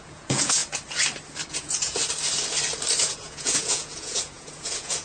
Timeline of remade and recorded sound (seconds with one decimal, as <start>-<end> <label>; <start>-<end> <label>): 0.0-0.6 remade; 0.6-1.5 recorded; 1.5-2.0 remade; 2.0-3.1 recorded; 3.1-5.0 remade